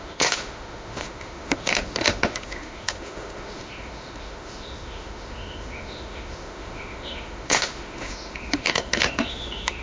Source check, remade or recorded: remade